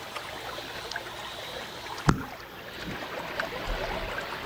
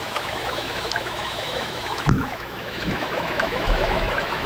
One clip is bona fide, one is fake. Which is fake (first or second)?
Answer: second